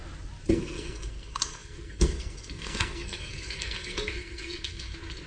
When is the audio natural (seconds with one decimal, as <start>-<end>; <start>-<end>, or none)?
0.0-0.5